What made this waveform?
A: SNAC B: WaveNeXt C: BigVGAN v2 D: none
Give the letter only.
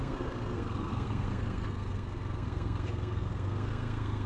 A